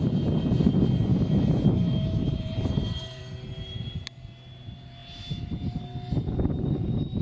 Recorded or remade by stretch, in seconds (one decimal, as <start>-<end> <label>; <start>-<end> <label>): 0.0-1.1 recorded; 1.1-3.2 remade; 3.2-7.2 recorded